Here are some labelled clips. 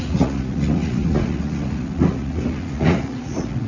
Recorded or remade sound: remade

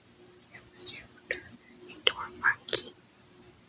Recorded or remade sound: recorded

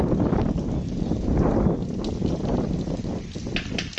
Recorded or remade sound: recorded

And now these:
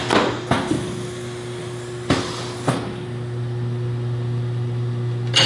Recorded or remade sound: recorded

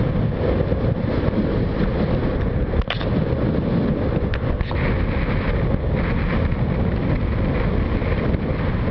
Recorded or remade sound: recorded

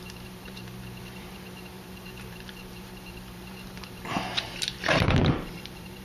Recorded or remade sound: remade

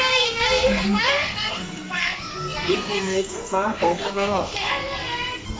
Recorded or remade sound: remade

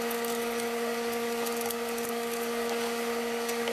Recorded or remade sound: remade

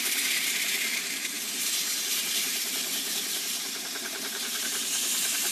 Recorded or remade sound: remade